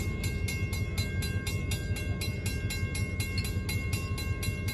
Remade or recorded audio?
recorded